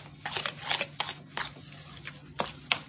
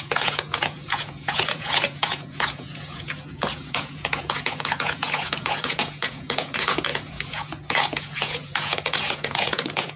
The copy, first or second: second